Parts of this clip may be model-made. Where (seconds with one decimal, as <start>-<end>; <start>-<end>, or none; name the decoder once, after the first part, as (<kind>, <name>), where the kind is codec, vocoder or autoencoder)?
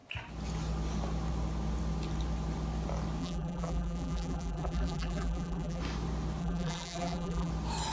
3.2-5.8 (vocoder, BigVGAN v2); 6.4-7.5